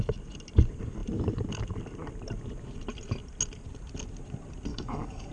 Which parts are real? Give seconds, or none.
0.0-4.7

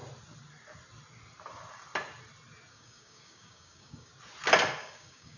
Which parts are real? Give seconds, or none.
0.0-2.7; 4.1-4.8

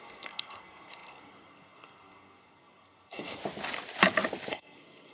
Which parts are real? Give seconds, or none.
3.4-4.5

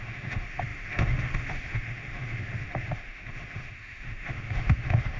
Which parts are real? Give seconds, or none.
none

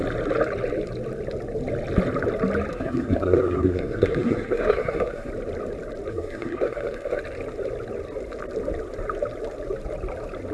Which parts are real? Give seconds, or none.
0.0-2.7; 5.3-6.1; 7.2-10.5

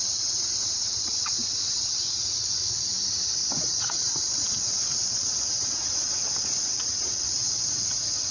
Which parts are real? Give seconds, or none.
none

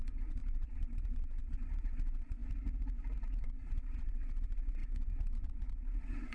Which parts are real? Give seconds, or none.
2.4-3.4

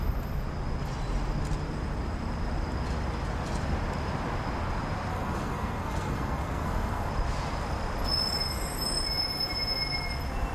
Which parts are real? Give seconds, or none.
0.0-5.1; 7.1-10.5